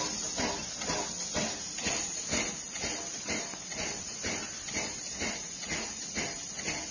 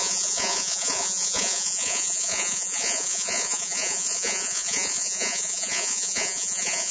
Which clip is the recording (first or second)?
first